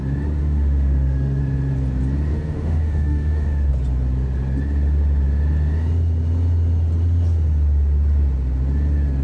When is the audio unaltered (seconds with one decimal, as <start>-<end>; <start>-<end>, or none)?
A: 0.0-0.4; 1.4-2.3; 3.7-9.2